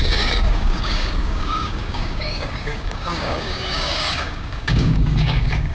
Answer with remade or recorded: remade